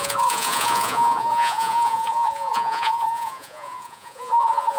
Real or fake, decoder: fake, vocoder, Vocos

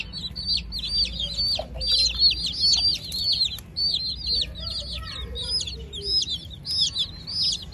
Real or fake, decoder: real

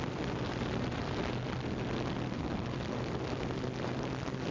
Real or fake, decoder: real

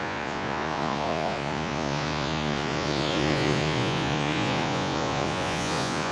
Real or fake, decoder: fake, vocoder, Vocos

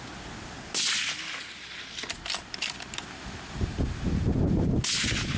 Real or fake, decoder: real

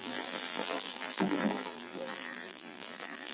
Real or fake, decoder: fake, vocoder, BigVGAN v2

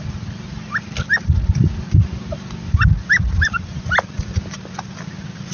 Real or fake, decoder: real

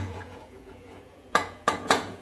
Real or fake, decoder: fake, vocoder, Vocos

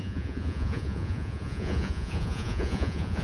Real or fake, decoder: fake, vocoder, Vocos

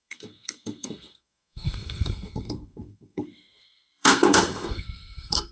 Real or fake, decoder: fake, codec, SNAC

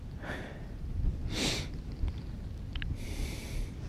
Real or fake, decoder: real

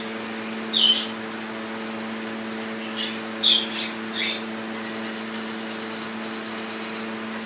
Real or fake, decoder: real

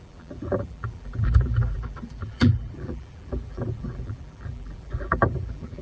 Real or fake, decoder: fake, vocoder, BigVGAN v2